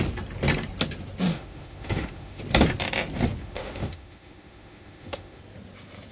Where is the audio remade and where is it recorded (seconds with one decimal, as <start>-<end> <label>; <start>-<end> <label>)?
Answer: 0.0-1.3 recorded; 1.3-2.4 remade; 2.4-3.4 recorded; 3.4-5.4 remade; 5.4-6.1 recorded